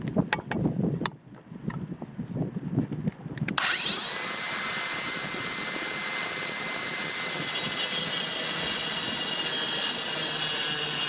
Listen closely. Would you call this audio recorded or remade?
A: recorded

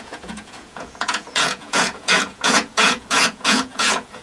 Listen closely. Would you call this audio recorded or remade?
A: remade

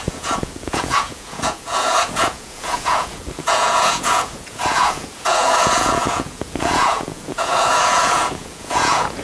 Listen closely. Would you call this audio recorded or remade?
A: remade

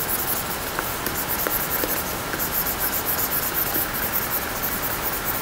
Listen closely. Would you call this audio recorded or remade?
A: recorded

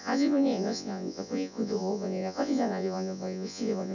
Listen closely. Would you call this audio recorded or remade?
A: remade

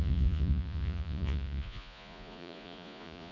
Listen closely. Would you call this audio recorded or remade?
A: remade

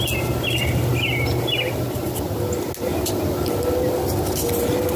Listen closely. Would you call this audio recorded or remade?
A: recorded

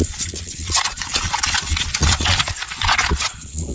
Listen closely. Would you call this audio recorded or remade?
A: remade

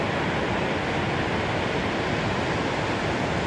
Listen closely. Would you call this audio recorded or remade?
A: recorded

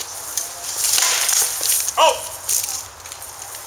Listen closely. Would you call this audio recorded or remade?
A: recorded